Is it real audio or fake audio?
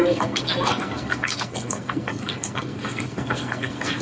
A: fake